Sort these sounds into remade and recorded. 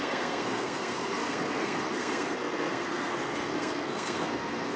remade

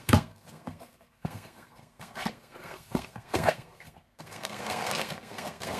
remade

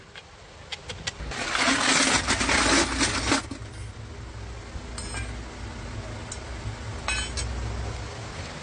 recorded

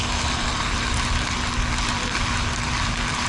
recorded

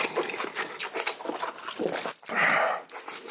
recorded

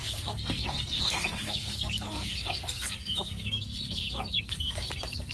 remade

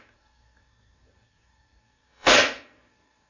remade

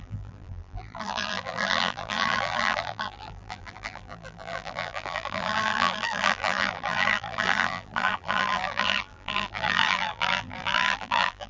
remade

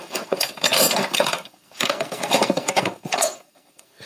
remade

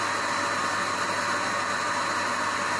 recorded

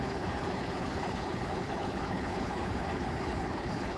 remade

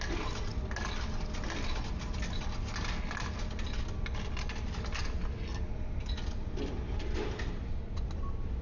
recorded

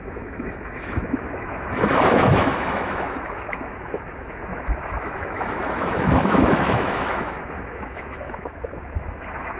remade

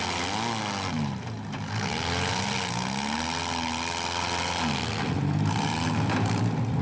recorded